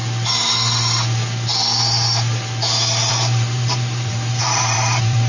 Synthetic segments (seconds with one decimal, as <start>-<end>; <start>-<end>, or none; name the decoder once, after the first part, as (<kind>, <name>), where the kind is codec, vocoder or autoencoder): 3.1-5.3 (vocoder, BigVGAN v2)